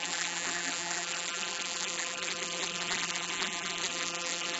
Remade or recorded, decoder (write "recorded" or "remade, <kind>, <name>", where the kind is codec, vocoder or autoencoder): remade, vocoder, BigVGAN v2